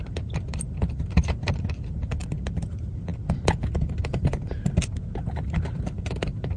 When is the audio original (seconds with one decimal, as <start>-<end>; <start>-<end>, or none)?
2.2-2.7; 3.1-4.0